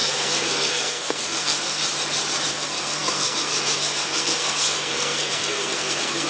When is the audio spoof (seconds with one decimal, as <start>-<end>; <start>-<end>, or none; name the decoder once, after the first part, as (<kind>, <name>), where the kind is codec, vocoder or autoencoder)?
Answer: 0.0-1.8 (codec, SNAC); 2.5-6.3